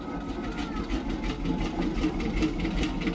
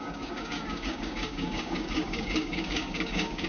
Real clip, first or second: first